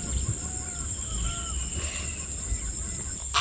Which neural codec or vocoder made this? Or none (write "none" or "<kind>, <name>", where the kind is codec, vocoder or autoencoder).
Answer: none